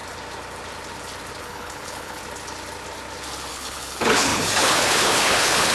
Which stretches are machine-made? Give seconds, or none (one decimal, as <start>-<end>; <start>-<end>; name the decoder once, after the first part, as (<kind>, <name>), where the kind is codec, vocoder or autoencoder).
1.4-2.2 (codec, HILCodec); 3.5-5.7